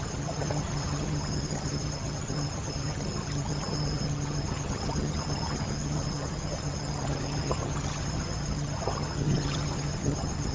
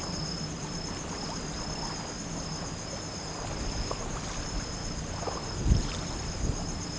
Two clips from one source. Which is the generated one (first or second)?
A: first